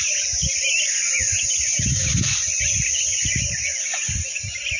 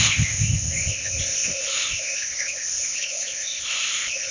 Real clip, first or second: first